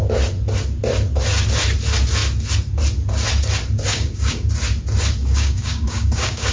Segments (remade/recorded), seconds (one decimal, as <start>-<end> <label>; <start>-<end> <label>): 0.0-3.9 recorded; 3.9-4.5 remade; 4.5-5.2 recorded; 5.2-6.5 remade